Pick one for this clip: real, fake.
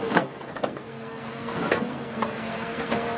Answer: fake